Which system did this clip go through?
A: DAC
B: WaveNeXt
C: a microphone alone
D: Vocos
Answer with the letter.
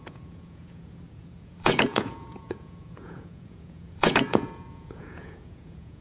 D